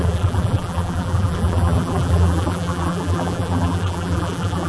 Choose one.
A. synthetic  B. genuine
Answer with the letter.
A